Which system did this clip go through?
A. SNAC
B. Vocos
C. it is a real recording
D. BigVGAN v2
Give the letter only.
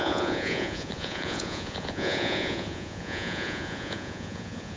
B